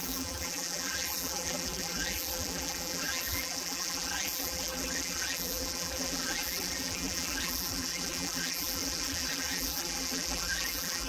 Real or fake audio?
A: fake